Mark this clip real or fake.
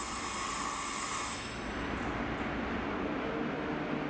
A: real